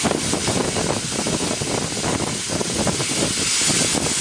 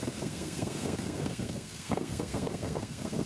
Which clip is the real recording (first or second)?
first